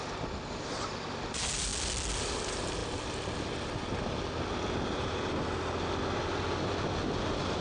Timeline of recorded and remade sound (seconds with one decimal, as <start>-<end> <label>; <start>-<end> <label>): 0.0-7.6 recorded